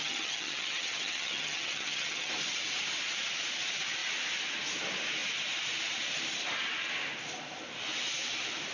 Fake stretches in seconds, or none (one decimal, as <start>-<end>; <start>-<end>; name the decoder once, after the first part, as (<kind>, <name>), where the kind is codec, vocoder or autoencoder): 0.0-2.3 (vocoder, HiFi-GAN)